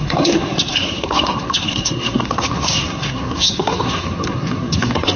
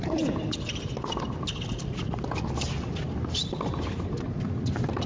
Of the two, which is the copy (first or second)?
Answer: first